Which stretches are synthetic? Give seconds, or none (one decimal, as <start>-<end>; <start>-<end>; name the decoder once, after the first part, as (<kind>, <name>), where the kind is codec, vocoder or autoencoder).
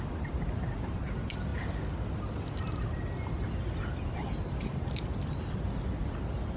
none